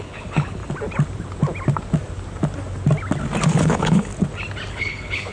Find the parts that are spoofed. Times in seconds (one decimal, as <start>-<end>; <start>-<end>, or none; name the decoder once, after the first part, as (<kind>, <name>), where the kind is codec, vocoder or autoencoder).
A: 0.0-0.6 (codec, HILCodec); 3.6-4.1; 4.7-5.3